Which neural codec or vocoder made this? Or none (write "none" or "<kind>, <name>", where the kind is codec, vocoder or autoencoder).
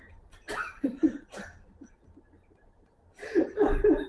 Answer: none